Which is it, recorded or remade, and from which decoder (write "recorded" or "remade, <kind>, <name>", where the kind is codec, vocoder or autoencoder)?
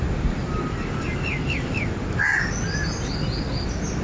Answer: recorded